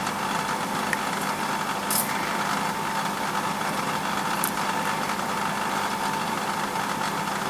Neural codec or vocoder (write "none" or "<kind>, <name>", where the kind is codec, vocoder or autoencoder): none